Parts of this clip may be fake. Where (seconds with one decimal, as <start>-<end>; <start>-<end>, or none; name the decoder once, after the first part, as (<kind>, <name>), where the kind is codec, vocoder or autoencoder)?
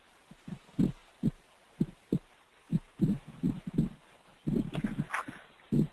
2.6-3.3 (autoencoder, DAC-VAE)